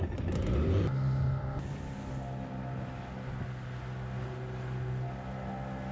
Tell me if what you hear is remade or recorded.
recorded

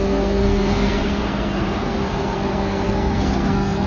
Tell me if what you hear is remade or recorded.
remade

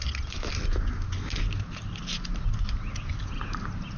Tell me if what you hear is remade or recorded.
recorded